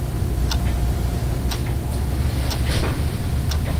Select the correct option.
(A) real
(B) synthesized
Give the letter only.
A